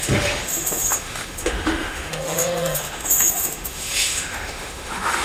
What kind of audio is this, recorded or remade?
remade